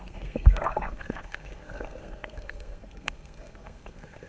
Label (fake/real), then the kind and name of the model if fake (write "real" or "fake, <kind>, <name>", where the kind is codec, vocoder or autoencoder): fake, codec, SNAC